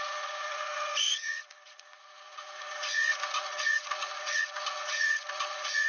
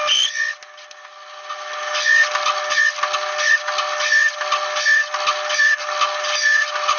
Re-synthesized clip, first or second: first